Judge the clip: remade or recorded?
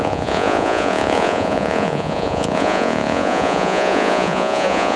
remade